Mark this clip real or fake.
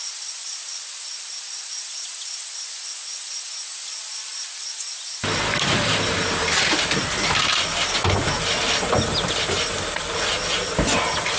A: real